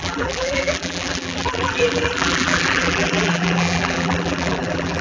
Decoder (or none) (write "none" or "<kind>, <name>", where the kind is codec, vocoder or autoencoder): vocoder, BigVGAN v2